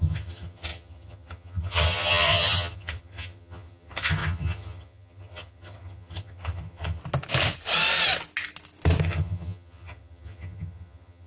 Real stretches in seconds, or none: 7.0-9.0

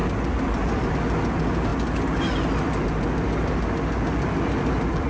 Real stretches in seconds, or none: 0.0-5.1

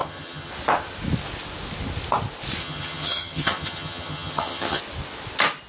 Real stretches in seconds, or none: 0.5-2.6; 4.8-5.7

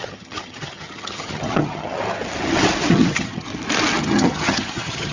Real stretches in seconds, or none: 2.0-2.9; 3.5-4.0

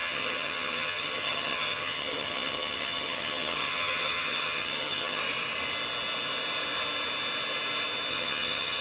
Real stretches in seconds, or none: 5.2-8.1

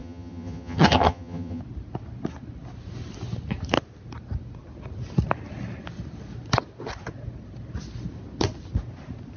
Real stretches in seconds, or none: 1.6-9.4

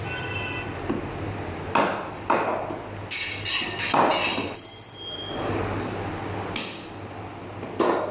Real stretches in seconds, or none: 0.0-8.1